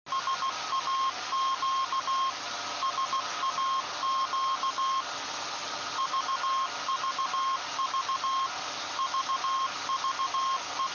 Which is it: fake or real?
real